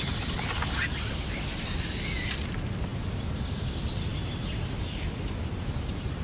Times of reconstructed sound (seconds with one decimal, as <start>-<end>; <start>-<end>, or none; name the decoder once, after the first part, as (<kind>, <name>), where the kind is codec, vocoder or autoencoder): none